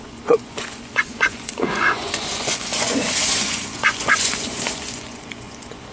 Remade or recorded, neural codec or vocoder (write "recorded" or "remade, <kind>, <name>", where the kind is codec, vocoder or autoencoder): remade, vocoder, Vocos